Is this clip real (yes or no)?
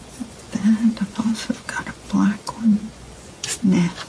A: no